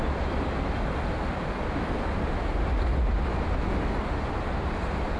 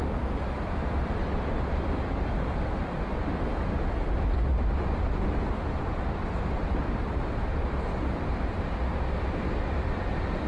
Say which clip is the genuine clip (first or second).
first